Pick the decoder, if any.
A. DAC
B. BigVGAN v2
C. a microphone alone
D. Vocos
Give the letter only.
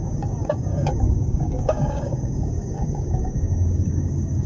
A